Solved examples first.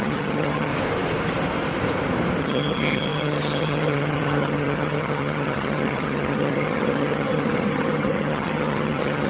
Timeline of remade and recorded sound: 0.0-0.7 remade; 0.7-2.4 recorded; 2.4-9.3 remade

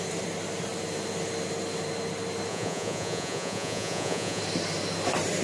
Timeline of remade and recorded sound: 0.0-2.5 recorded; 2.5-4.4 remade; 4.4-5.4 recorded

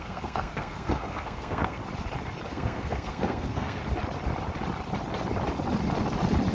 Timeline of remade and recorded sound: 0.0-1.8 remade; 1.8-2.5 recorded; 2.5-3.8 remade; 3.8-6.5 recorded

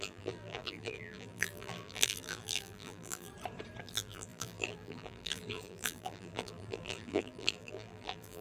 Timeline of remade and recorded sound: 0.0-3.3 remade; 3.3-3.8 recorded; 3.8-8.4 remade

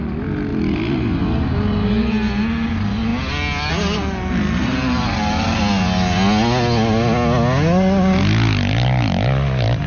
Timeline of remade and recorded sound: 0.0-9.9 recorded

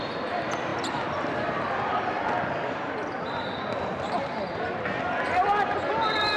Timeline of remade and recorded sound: 0.0-0.7 remade; 0.7-1.9 recorded; 1.9-6.4 remade

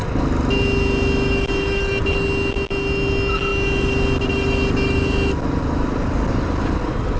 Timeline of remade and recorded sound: 0.0-7.2 recorded

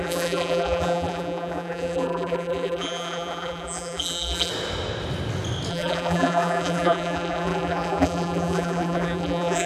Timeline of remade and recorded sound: 0.0-4.5 remade; 4.5-5.7 recorded; 5.7-9.7 remade